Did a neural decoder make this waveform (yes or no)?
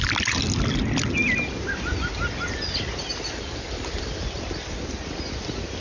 no